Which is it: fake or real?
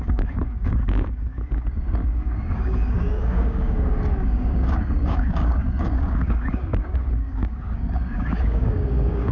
fake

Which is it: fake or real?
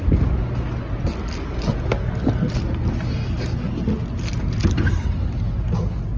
real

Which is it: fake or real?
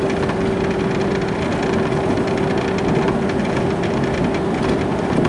real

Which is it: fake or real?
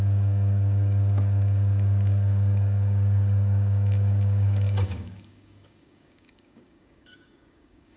fake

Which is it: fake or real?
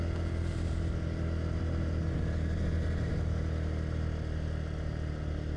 real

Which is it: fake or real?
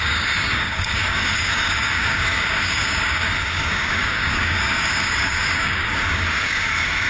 fake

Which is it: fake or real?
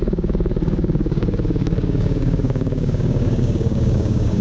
fake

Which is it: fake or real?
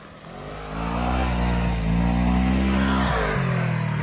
real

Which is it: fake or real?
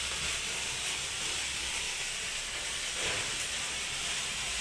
real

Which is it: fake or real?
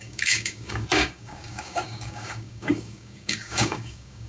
fake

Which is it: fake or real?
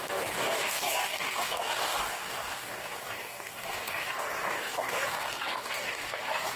fake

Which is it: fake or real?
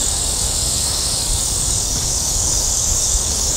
fake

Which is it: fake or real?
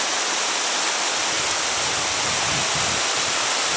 real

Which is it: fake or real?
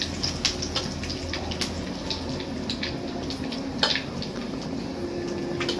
real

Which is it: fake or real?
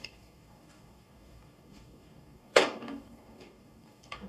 fake